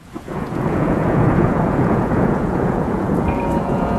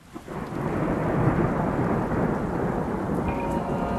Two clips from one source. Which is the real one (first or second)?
second